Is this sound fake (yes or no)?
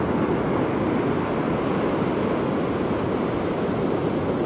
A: no